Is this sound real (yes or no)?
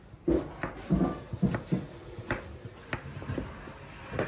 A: yes